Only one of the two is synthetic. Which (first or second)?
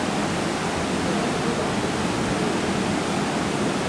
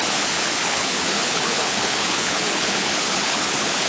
second